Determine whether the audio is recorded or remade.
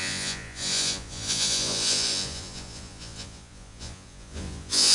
remade